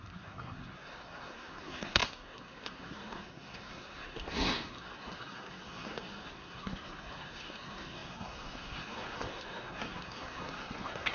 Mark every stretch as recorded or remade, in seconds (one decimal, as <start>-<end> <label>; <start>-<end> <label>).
0.0-11.1 remade